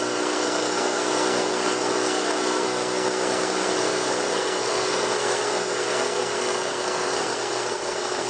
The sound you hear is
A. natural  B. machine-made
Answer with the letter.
B